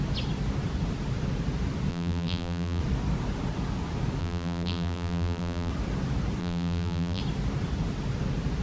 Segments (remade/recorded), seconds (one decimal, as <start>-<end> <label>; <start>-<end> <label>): 0.0-1.9 recorded; 1.9-2.8 remade; 2.8-4.2 recorded; 4.2-5.7 remade; 5.7-6.4 recorded; 6.4-7.2 remade; 7.2-8.6 recorded